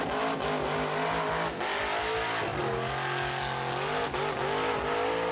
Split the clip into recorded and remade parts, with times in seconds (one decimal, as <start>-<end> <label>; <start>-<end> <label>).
0.0-5.3 recorded